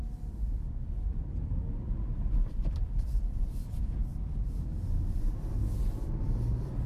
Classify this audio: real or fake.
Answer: fake